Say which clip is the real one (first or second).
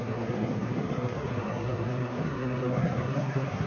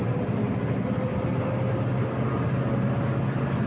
second